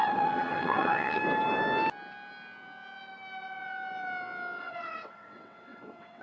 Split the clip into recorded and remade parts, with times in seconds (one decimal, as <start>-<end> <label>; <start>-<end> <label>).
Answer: 0.0-1.2 remade; 1.2-4.6 recorded; 4.6-6.2 remade